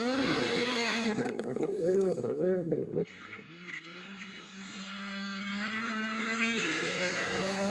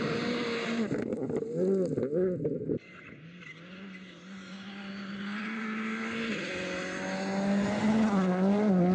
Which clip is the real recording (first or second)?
second